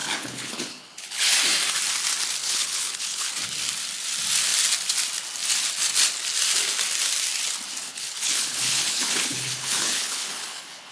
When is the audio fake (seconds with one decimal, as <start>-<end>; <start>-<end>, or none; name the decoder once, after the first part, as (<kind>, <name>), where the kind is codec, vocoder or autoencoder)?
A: 0.0-1.3 (codec, HILCodec); 2.4-3.3; 7.8-10.9